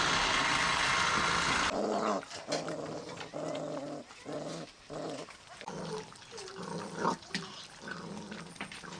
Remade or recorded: recorded